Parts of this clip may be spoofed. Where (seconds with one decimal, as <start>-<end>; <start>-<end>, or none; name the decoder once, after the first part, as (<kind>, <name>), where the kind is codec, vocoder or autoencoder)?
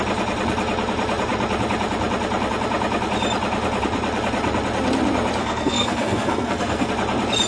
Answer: 5.4-6.9 (codec, SNAC)